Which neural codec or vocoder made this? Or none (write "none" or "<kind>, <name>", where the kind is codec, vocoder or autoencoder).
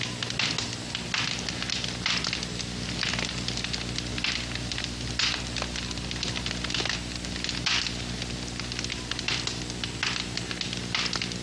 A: none